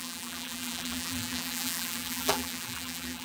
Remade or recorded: remade